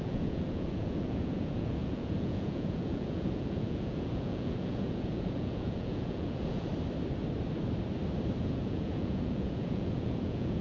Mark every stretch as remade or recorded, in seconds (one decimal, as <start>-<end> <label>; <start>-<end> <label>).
0.0-6.7 remade; 6.7-8.4 recorded; 8.4-10.6 remade